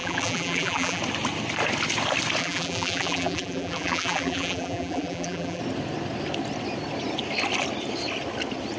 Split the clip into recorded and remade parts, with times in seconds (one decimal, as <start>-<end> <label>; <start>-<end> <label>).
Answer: 0.0-1.0 remade; 1.0-2.4 recorded; 2.4-5.6 remade; 5.6-8.8 recorded